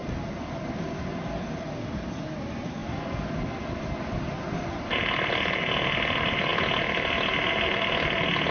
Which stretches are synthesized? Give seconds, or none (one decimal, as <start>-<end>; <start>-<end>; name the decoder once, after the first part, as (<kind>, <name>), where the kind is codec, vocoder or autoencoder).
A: none